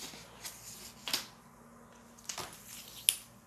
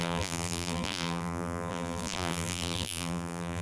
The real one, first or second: first